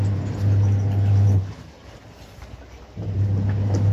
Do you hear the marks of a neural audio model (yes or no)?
no